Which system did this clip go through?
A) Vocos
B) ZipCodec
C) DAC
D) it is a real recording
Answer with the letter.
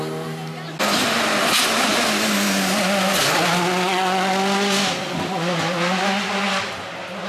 D